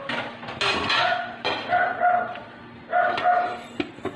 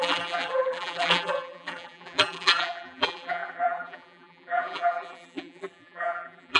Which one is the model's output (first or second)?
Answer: second